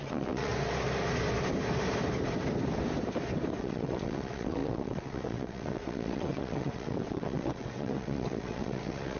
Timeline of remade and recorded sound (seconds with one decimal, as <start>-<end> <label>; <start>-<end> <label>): 0.0-0.5 remade; 0.5-3.6 recorded; 3.6-9.2 remade

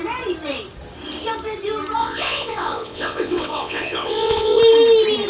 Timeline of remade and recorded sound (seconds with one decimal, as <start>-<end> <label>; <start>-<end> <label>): 0.0-2.0 recorded; 2.0-4.6 remade; 4.6-5.3 recorded

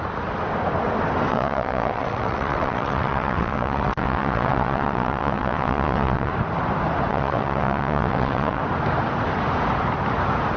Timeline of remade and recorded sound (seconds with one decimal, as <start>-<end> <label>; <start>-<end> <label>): 0.0-1.3 recorded; 1.3-6.3 remade; 6.3-7.1 recorded; 7.1-8.6 remade; 8.6-10.6 recorded

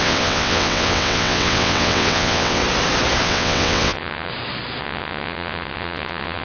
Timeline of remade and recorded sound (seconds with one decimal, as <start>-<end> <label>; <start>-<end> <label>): 0.0-2.6 remade; 2.6-3.2 recorded; 3.2-4.3 remade; 4.3-4.8 recorded; 4.8-6.4 remade

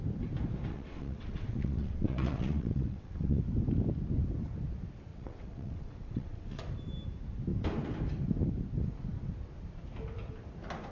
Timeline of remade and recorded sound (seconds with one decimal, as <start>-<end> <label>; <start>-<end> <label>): 0.0-0.7 recorded; 0.7-3.4 remade; 3.4-5.1 recorded; 5.1-6.6 remade; 6.6-10.9 recorded

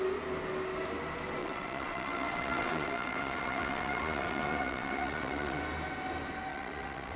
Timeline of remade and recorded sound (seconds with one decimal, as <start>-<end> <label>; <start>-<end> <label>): 0.0-1.4 recorded; 1.4-5.6 remade; 5.6-6.5 recorded; 6.5-7.2 remade

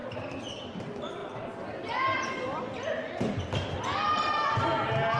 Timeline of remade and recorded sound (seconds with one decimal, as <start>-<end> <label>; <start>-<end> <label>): 0.0-5.2 recorded